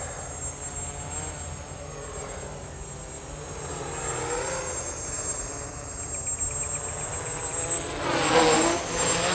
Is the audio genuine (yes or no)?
yes